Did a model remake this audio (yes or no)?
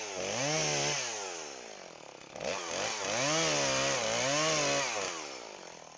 no